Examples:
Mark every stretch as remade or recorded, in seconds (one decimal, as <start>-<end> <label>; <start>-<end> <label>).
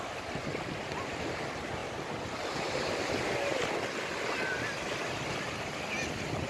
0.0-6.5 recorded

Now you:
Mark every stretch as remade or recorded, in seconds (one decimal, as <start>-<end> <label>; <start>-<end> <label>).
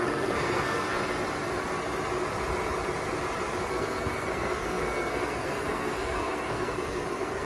0.0-1.0 remade; 1.0-3.6 recorded; 3.6-7.5 remade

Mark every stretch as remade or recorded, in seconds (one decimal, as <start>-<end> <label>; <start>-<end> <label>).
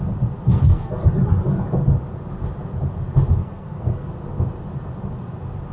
0.0-0.5 recorded; 0.5-1.0 remade; 1.0-3.4 recorded; 3.4-4.1 remade; 4.1-5.7 recorded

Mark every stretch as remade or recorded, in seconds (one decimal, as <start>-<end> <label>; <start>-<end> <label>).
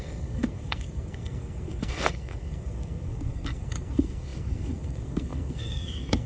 0.0-6.3 remade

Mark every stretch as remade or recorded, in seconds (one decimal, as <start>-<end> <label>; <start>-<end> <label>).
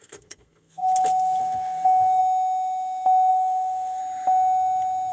0.0-0.8 remade; 0.8-1.4 recorded; 1.4-2.2 remade; 2.2-3.3 recorded; 3.3-4.0 remade; 4.0-5.1 recorded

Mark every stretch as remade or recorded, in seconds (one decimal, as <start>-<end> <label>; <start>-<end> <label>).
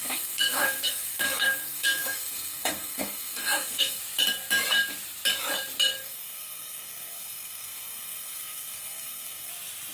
0.0-4.0 remade; 4.0-6.0 recorded; 6.0-9.5 remade; 9.5-9.9 recorded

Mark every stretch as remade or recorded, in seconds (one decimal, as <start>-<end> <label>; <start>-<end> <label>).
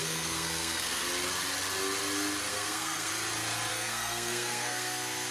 0.0-1.0 remade; 1.0-2.5 recorded; 2.5-3.1 remade; 3.1-3.7 recorded; 3.7-5.3 remade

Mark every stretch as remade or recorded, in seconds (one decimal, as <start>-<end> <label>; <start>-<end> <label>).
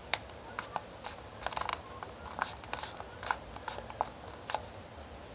0.0-5.3 recorded